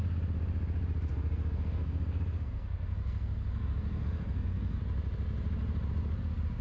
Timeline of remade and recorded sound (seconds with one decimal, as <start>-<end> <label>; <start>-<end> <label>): 0.0-1.1 recorded; 1.1-4.8 remade; 4.8-6.6 recorded